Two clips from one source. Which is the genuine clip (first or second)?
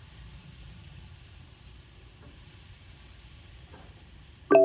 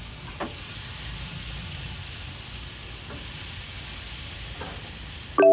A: second